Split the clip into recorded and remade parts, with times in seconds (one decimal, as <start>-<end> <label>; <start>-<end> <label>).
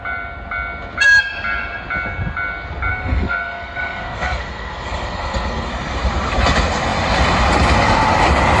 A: 0.0-2.9 recorded; 2.9-5.7 remade; 5.7-8.6 recorded